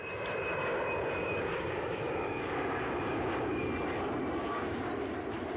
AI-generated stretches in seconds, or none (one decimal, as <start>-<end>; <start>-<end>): 1.2-3.7; 4.4-4.9